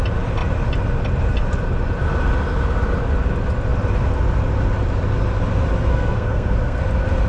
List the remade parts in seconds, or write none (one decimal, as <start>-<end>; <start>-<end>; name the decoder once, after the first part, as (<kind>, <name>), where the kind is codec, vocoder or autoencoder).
5.9-6.8 (codec, SNAC)